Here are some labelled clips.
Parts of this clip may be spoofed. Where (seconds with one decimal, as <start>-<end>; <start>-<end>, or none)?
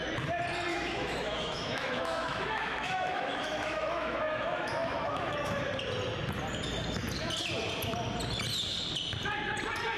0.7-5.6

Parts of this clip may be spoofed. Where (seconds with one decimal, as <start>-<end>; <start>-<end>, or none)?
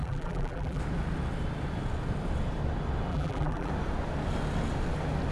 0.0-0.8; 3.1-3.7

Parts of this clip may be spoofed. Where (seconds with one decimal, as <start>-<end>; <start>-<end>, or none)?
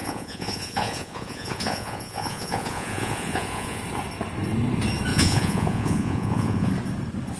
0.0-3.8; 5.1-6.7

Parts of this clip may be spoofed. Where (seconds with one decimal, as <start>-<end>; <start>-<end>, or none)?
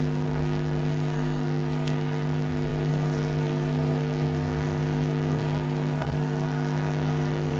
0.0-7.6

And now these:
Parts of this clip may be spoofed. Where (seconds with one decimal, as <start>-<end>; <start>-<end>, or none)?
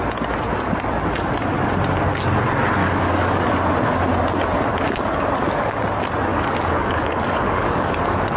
2.8-3.4; 6.3-7.9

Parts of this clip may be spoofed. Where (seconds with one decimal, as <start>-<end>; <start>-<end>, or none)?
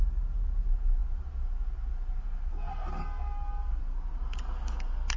none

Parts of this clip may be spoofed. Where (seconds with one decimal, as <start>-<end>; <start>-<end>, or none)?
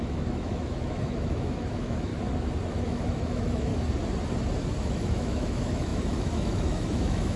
0.0-2.1; 2.7-3.7; 4.8-7.4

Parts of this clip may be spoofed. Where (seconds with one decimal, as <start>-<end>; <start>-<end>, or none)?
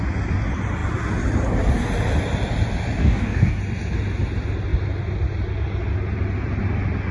3.0-3.6